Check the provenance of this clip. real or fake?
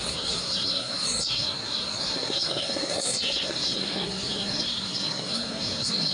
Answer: fake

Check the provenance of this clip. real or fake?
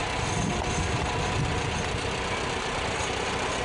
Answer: real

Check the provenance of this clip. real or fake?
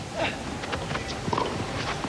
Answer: real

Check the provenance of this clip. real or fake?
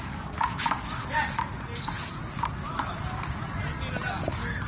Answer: real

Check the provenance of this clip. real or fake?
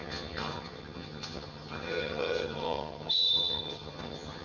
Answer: fake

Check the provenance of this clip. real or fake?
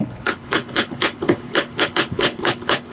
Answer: fake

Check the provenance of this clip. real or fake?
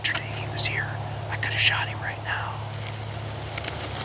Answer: real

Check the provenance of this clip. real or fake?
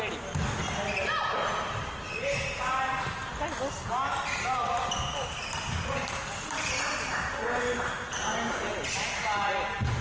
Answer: real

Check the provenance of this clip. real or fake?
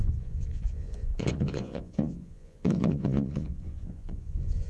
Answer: fake